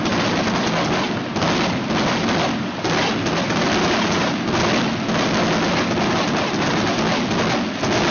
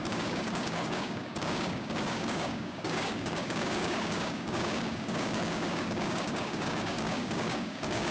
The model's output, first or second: second